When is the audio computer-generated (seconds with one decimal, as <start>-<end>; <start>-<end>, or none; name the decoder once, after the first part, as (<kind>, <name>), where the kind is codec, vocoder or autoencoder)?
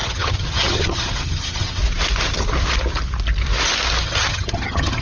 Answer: 0.0-1.8 (vocoder, HiFi-GAN); 4.0-5.0